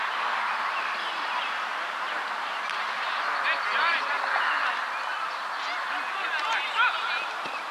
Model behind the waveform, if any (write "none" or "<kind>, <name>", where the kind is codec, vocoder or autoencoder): none